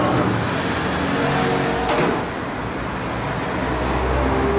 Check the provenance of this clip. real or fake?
real